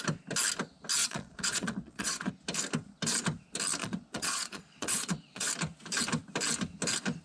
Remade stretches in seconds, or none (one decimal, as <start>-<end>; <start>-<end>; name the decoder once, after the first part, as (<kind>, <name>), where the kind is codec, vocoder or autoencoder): 1.0-2.3 (vocoder, Vocos); 3.8-5.5